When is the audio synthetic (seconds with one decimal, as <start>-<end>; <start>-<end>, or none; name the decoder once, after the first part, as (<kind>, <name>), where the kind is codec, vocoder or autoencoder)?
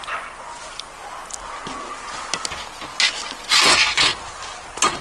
0.0-0.6 (vocoder, Vocos); 3.6-4.1